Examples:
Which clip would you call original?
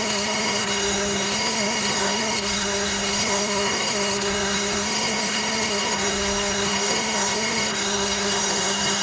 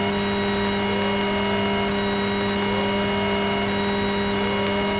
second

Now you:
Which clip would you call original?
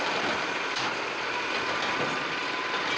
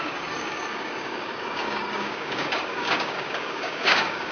first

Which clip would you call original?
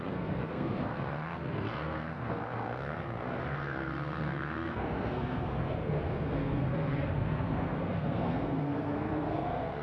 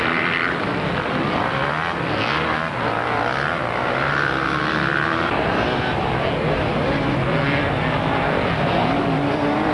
second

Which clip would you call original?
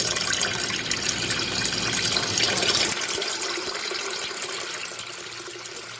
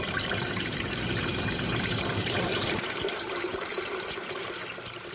first